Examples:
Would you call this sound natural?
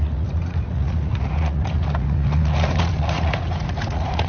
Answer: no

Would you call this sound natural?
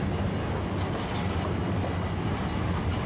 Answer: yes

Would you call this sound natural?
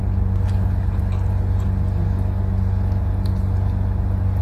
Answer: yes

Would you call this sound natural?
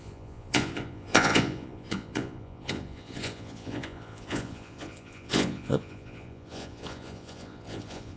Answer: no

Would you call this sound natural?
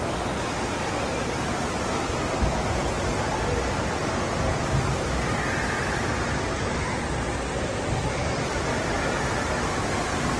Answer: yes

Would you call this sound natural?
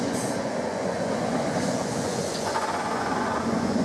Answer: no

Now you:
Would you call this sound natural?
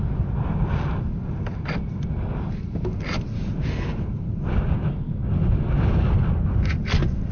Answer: yes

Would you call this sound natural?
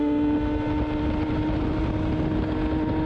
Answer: yes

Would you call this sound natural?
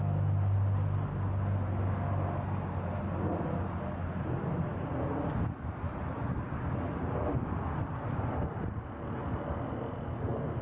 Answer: yes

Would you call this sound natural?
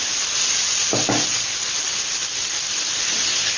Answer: yes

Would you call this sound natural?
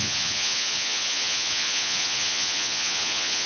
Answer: no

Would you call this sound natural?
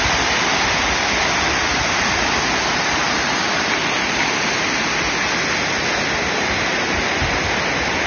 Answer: yes